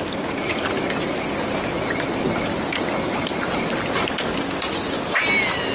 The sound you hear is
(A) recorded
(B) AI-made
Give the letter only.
A